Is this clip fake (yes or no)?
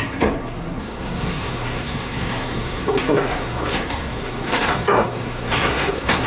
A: yes